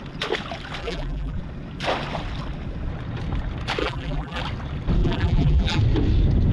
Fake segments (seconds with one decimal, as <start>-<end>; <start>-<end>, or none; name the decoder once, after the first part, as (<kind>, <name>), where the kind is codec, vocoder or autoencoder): 0.8-1.4 (vocoder, BigVGAN v2); 3.8-4.4; 5.0-5.8